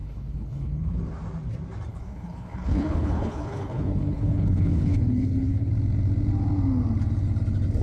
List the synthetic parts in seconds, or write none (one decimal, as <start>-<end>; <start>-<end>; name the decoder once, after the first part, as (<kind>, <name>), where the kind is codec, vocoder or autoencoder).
0.0-1.0 (codec, HILCodec); 1.9-5.7